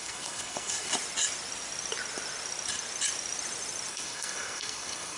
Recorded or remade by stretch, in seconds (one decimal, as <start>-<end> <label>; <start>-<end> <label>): 0.0-0.9 remade; 0.9-3.9 recorded; 3.9-5.2 remade

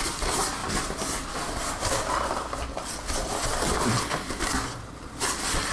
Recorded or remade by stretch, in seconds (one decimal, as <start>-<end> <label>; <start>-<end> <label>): 0.0-5.7 recorded

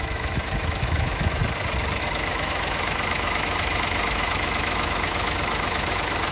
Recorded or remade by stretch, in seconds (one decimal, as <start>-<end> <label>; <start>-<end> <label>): 0.0-1.4 remade; 1.4-2.0 recorded; 2.0-6.3 remade

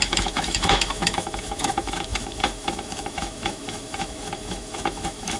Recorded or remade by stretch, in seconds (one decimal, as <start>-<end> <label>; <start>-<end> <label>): 0.0-5.4 remade

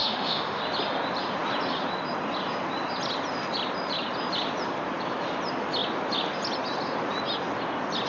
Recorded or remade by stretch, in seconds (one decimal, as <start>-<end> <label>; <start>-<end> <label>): 0.0-0.6 remade; 0.6-8.1 recorded